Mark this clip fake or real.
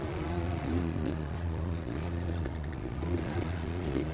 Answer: fake